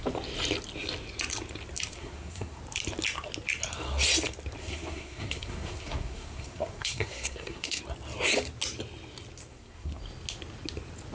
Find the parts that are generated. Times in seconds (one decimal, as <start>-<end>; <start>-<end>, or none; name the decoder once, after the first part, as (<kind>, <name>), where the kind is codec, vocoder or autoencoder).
1.9-2.6 (codec, SNAC); 4.6-7.8; 9.5-10.0